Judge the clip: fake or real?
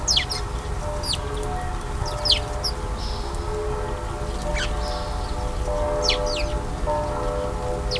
real